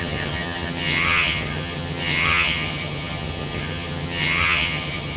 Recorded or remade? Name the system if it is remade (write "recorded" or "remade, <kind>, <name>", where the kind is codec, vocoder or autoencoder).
remade, vocoder, HiFi-GAN